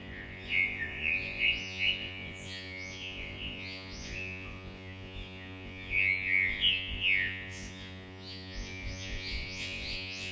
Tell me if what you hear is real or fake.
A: fake